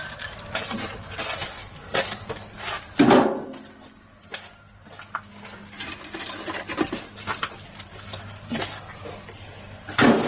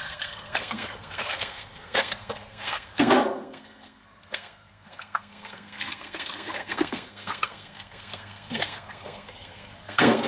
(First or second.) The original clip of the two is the first